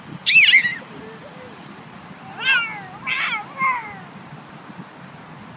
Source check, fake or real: real